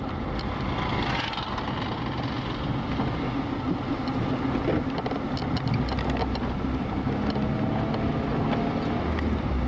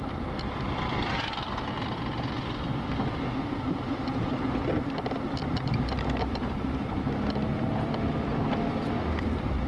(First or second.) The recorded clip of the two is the first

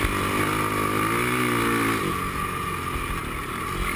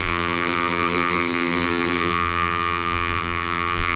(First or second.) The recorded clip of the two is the first